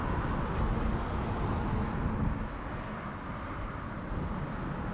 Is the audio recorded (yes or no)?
yes